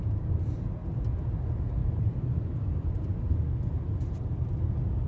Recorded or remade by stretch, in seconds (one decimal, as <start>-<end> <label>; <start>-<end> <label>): 0.0-0.8 recorded; 0.8-1.3 remade; 1.3-1.8 recorded; 1.8-3.1 remade; 3.1-5.1 recorded